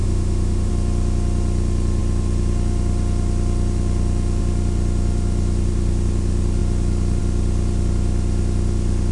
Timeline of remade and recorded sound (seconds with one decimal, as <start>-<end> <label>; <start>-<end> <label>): 0.0-0.7 remade; 0.7-9.1 recorded